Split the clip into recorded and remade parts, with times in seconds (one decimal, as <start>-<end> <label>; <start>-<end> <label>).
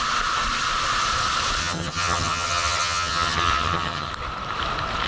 0.0-1.6 recorded; 1.6-4.1 remade; 4.1-5.1 recorded